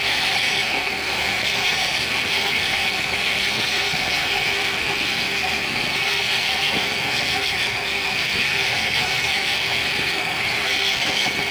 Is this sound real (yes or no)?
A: no